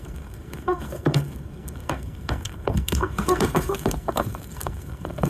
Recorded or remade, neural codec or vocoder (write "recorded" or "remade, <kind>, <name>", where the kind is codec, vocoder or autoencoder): remade, codec, SNAC